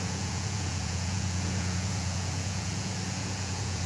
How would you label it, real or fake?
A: fake